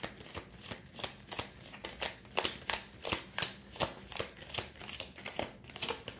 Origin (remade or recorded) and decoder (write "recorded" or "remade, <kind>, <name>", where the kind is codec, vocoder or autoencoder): recorded